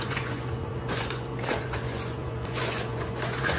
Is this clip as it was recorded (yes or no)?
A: no